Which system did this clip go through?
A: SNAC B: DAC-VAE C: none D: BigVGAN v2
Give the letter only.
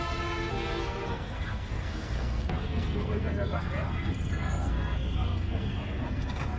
A